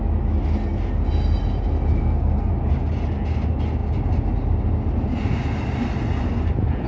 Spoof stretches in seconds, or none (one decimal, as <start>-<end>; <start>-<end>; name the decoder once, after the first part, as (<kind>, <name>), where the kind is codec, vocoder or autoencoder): 2.0-2.5 (codec, SNAC)